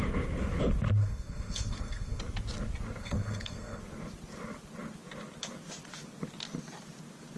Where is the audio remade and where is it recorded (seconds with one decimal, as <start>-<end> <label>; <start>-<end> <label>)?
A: 0.0-1.0 recorded; 1.0-2.2 remade; 2.2-3.0 recorded; 3.0-3.8 remade; 3.8-7.4 recorded